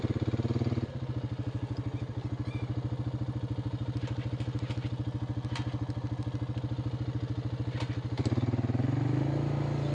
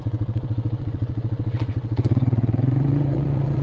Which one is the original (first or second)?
first